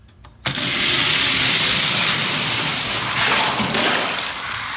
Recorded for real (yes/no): no